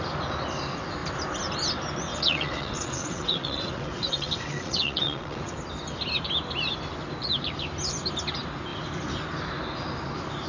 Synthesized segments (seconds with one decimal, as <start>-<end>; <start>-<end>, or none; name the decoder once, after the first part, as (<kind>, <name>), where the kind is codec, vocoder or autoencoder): 2.1-5.6 (vocoder, WaveNeXt)

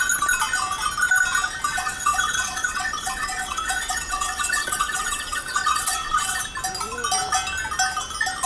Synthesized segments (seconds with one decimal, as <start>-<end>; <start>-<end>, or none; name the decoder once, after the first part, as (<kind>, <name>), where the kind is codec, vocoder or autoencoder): 1.7-6.4 (vocoder, WaveNeXt)

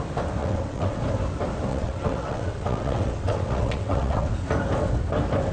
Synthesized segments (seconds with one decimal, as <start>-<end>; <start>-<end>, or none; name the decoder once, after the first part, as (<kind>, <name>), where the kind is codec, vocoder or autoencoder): 0.4-1.0 (vocoder, WaveNeXt); 1.7-4.3